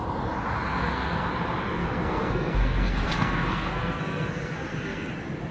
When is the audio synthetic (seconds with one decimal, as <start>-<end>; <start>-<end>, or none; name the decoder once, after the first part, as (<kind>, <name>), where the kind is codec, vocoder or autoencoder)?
0.8-1.3 (codec, SNAC); 1.8-5.1